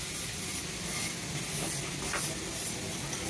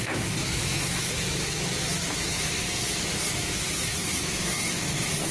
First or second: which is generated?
second